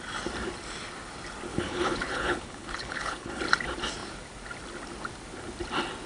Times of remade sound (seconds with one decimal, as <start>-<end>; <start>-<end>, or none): 1.5-3.4